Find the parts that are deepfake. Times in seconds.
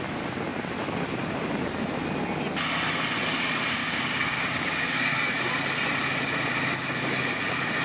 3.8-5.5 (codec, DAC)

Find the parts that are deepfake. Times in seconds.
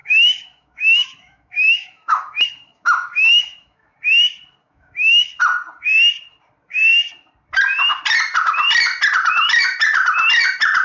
0.0-3.9 (autoencoder, DAC-VAE); 4.6-5.4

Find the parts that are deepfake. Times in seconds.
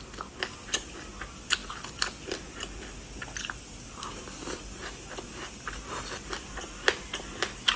none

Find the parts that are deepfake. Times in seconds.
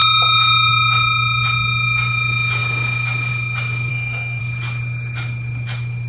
3.9-4.4 (codec, SNAC)